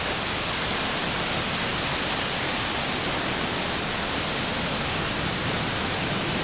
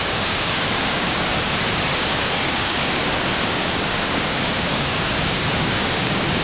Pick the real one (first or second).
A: first